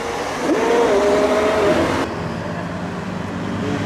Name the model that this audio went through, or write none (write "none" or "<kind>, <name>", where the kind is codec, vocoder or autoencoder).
none